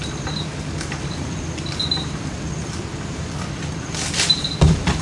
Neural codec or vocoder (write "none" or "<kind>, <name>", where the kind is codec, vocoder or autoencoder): vocoder, BigVGAN v2